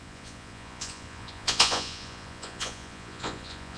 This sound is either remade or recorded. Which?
remade